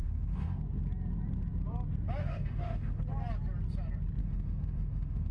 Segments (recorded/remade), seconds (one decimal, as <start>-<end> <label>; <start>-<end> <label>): 0.0-0.6 remade; 0.6-2.2 recorded; 2.2-3.0 remade; 3.0-4.2 recorded; 4.2-5.3 remade